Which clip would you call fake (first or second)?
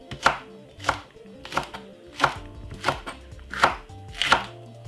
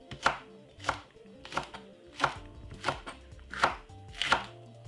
second